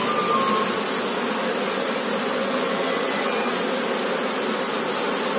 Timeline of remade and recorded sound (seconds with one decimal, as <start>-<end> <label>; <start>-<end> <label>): 0.0-2.2 recorded; 2.2-3.5 remade; 3.5-5.4 recorded